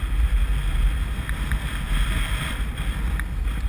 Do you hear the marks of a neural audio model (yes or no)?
no